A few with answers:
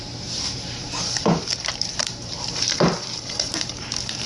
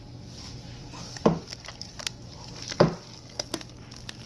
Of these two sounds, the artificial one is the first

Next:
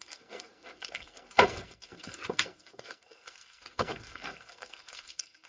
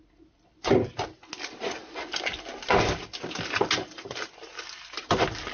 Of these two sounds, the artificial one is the first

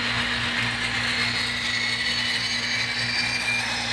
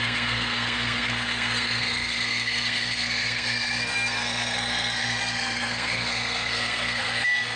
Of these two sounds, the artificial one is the second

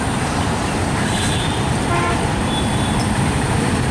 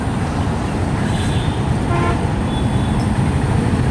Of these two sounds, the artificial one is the first